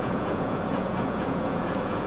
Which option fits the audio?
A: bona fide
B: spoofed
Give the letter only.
B